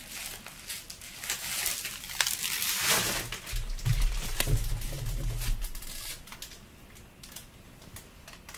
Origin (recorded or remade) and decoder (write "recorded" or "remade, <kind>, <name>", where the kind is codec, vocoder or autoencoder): recorded